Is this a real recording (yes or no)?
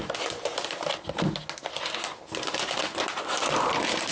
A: yes